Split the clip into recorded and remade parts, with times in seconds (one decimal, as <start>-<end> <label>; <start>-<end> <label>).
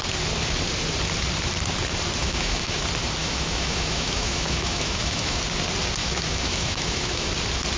0.0-2.2 recorded; 2.2-2.8 remade; 2.8-3.2 recorded; 3.2-5.4 remade; 5.4-6.0 recorded; 6.0-7.3 remade; 7.3-7.8 recorded